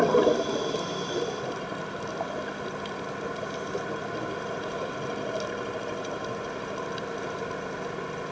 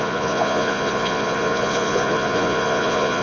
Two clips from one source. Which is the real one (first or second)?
first